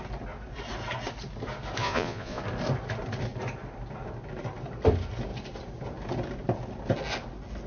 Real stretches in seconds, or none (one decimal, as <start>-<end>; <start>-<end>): 0.0-1.8; 2.4-7.7